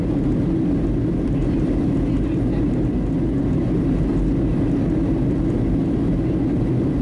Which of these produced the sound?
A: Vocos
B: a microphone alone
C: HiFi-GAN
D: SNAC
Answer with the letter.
B